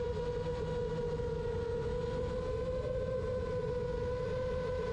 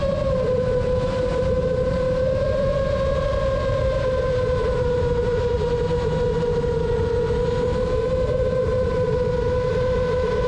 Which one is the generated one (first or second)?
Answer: second